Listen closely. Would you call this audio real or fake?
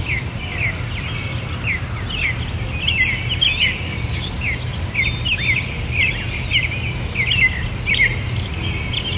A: real